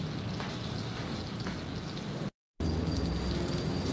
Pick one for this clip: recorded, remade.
recorded